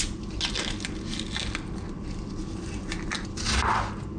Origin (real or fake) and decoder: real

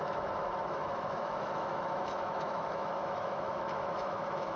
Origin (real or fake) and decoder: fake, autoencoder, DAC-VAE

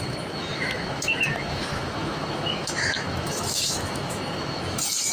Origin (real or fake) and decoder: fake, autoencoder, DAC-VAE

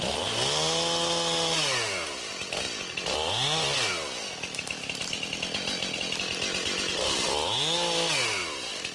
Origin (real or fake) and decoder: real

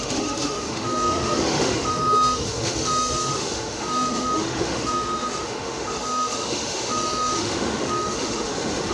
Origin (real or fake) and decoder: fake, autoencoder, DAC-VAE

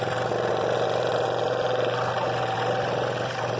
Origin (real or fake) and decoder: real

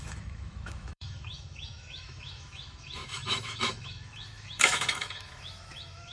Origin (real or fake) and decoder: fake, autoencoder, DAC-VAE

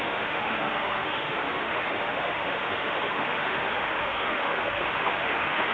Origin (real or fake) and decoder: fake, autoencoder, DAC-VAE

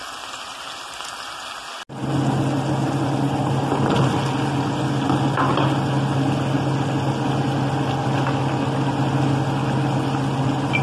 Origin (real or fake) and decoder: real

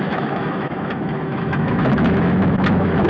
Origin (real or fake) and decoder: fake, autoencoder, DAC-VAE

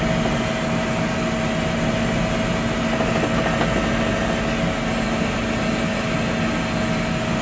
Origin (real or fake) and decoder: real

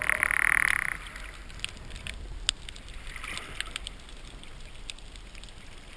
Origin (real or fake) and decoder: real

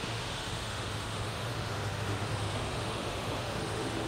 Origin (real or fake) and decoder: fake, autoencoder, DAC-VAE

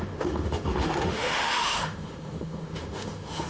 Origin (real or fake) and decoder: fake, autoencoder, DAC-VAE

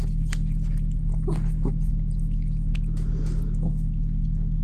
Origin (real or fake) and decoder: real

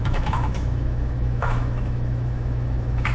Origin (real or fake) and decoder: fake, autoencoder, DAC-VAE